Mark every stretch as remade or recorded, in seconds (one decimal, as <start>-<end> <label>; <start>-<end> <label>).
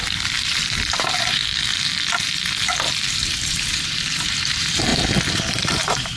0.0-1.4 remade; 1.4-3.1 recorded; 3.1-4.9 remade; 4.9-5.5 recorded; 5.5-6.2 remade